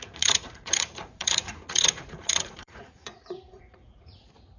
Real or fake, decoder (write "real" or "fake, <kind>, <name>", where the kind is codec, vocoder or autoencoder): fake, vocoder, Vocos